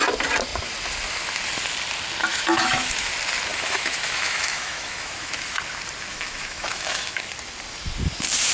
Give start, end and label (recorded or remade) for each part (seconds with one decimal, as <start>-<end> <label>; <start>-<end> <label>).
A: 0.0-2.3 recorded; 2.3-3.1 remade; 3.1-3.5 recorded; 3.5-5.6 remade; 5.6-6.1 recorded; 6.1-7.3 remade; 7.3-8.5 recorded